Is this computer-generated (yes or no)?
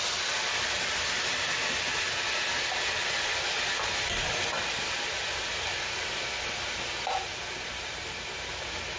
no